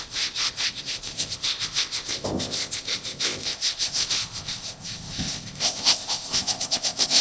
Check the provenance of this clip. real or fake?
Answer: fake